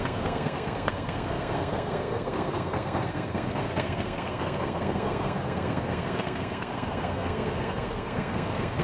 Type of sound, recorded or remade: remade